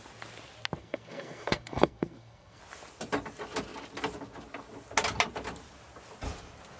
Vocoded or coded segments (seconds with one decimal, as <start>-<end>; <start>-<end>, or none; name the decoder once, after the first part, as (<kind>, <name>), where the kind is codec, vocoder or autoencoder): 0.8-2.6 (codec, SNAC)